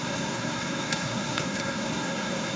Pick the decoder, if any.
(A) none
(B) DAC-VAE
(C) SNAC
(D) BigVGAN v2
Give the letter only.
C